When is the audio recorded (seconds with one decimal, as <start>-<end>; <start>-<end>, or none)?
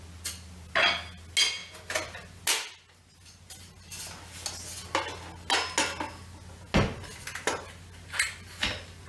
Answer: 0.0-9.1